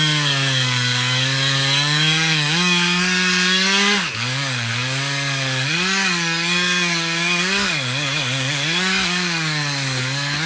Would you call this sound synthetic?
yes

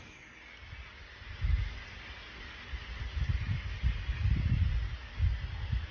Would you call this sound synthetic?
no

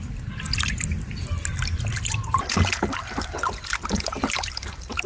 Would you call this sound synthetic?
no